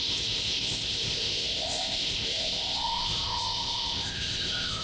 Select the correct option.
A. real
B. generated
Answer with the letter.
B